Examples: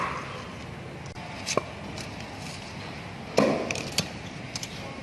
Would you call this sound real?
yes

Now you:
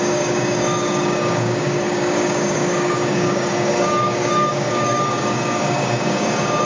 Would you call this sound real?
no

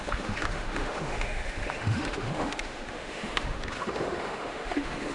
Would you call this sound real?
no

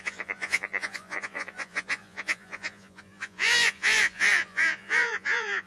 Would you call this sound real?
no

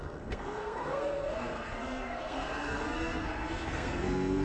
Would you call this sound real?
no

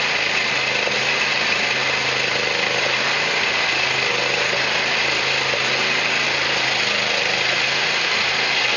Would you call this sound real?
yes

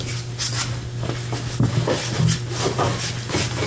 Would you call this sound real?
yes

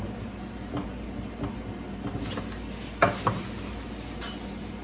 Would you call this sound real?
yes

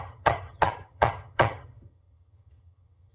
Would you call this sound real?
no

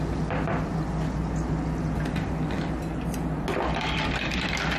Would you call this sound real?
yes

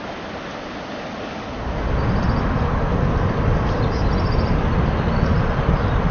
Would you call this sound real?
yes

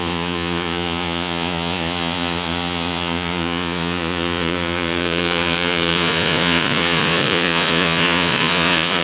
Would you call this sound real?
no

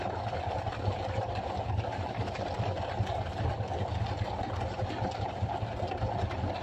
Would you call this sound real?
yes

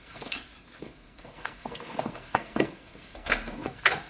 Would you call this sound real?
no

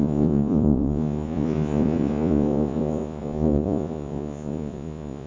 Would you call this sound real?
no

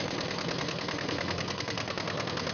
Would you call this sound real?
no